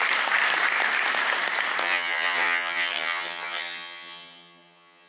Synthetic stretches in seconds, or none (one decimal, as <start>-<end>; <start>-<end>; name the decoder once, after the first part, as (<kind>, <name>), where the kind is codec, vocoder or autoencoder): 1.8-5.1 (vocoder, HiFi-GAN)